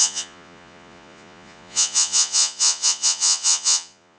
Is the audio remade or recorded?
remade